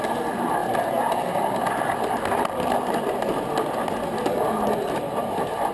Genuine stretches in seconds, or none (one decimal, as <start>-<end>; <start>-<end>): 0.0-5.7